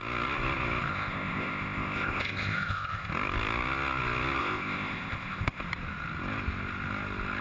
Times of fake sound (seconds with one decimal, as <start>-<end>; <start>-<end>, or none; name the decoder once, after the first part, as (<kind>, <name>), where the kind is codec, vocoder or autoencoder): 0.9-3.1 (codec, ZipCodec); 4.4-5.6